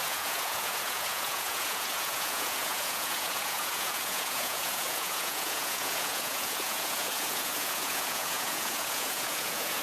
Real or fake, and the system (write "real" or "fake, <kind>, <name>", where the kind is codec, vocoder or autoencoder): fake, vocoder, Vocos